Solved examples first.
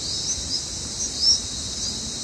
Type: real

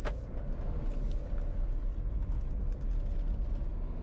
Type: real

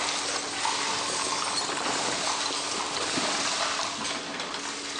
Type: real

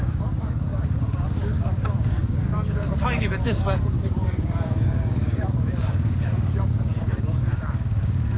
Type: fake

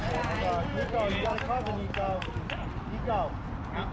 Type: real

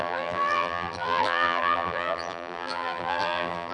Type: fake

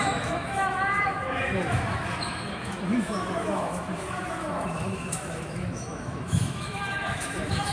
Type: fake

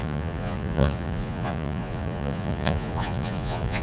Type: fake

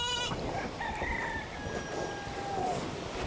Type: real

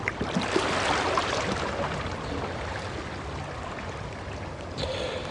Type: real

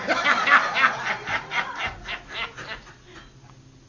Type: real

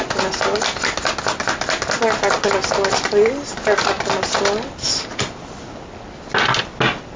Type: real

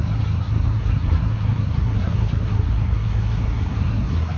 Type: fake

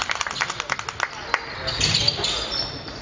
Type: real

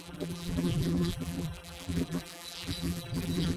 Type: fake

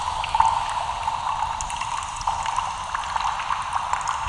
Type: real